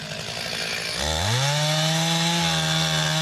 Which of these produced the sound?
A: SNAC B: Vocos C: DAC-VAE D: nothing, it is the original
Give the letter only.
D